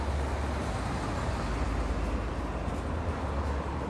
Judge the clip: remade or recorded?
recorded